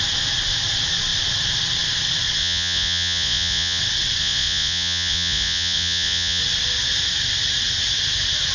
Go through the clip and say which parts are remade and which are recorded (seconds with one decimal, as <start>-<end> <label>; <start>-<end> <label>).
0.0-2.4 recorded; 2.4-3.8 remade; 3.8-4.2 recorded; 4.2-6.4 remade; 6.4-8.5 recorded